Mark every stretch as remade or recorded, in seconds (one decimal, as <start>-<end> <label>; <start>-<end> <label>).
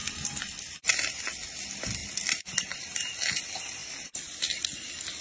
0.0-1.1 remade; 1.1-2.0 recorded; 2.0-3.4 remade; 3.4-3.8 recorded; 3.8-4.4 remade; 4.4-5.2 recorded